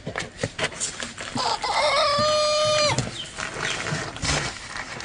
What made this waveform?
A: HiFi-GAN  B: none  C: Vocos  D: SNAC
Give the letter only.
B